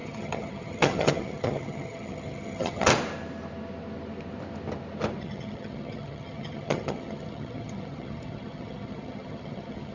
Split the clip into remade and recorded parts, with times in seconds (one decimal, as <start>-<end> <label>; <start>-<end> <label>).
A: 0.0-2.9 remade; 2.9-5.2 recorded; 5.2-9.9 remade